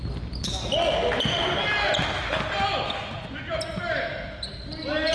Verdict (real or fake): real